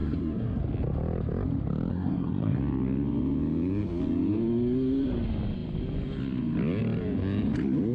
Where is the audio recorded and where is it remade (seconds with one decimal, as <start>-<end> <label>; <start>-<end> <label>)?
0.0-0.6 remade; 0.6-1.9 recorded; 1.9-2.6 remade; 2.6-7.9 recorded